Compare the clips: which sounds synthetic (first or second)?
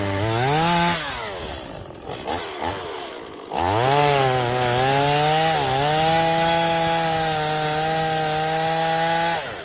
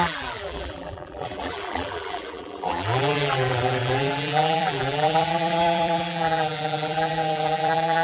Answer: second